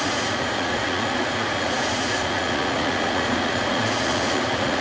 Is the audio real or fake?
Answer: fake